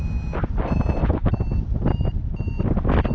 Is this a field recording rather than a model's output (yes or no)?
yes